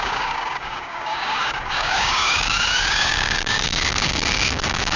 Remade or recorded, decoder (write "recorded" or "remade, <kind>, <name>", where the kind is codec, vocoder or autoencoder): remade, codec, DAC